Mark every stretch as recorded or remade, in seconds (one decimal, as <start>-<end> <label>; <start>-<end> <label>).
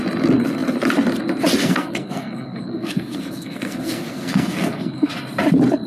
0.0-1.6 recorded; 1.6-5.1 remade; 5.1-5.9 recorded